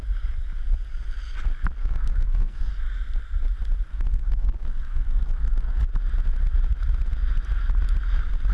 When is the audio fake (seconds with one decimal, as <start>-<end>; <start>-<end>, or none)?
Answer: 1.8-2.7; 3.9-5.8